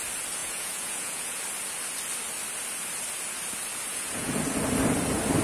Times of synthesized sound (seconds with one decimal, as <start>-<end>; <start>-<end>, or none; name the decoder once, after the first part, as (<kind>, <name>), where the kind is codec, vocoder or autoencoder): 0.4-1.4 (vocoder, Vocos); 3.9-4.4